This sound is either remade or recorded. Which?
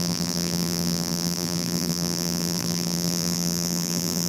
remade